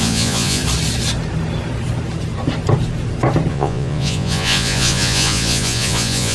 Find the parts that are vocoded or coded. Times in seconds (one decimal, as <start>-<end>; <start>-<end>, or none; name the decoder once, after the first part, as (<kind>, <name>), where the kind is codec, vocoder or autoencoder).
0.0-0.6 (vocoder, Vocos); 3.5-6.3